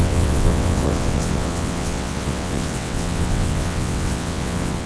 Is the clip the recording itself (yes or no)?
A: no